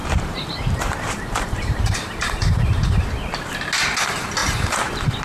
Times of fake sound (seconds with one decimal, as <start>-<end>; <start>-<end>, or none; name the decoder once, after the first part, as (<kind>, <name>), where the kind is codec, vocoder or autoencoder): 0.0-3.1 (vocoder, BigVGAN v2); 4.4-5.2